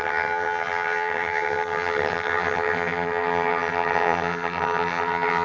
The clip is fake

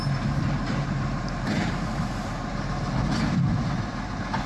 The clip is fake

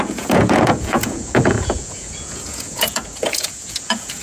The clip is fake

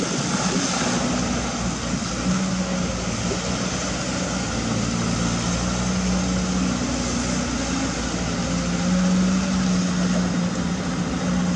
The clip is real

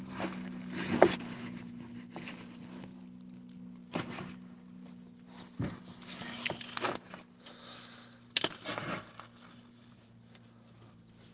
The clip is real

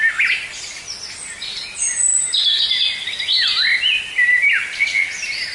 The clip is real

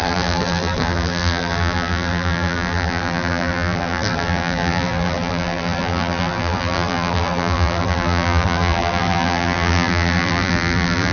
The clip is fake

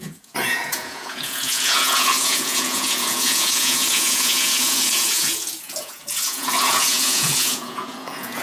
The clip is fake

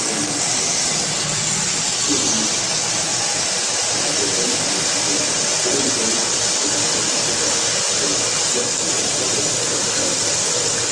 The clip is real